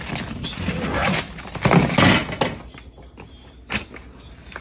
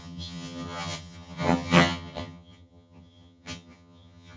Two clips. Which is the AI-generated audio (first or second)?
second